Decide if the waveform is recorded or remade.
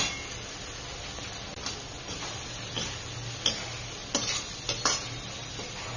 recorded